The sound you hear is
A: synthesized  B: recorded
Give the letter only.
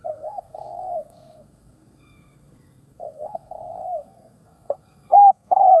A